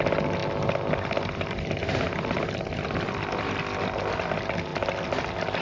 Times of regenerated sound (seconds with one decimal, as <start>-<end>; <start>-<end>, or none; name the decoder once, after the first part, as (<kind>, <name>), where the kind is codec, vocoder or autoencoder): none